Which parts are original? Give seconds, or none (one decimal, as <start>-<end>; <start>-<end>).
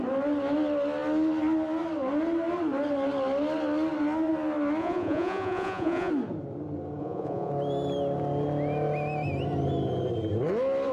0.0-4.8; 6.1-7.0; 7.5-10.9